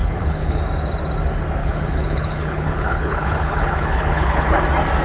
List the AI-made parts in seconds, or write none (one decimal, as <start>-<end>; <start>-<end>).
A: 0.0-0.6; 1.6-4.6